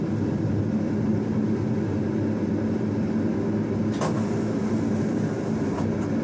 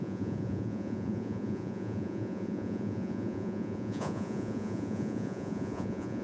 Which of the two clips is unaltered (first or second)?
first